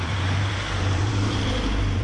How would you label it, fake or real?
fake